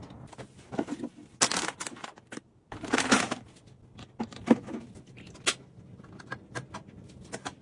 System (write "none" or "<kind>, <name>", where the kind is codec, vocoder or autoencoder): none